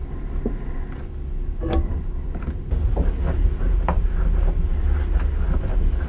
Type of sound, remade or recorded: recorded